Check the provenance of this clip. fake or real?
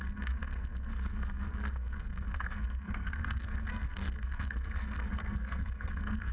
fake